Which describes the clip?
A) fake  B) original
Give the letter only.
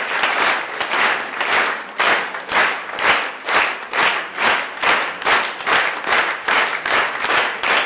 B